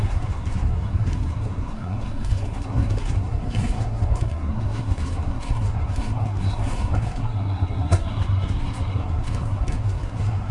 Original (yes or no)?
no